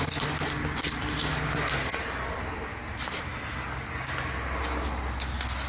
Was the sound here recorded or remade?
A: recorded